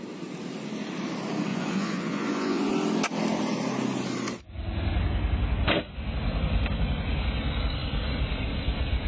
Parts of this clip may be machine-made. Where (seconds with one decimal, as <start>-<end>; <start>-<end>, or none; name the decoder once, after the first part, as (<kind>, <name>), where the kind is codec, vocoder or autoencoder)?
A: 1.5-2.7 (vocoder, Vocos)